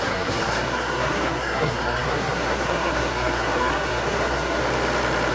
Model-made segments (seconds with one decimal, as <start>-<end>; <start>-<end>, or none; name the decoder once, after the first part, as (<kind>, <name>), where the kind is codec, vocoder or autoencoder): 0.0-4.6 (codec, SNAC)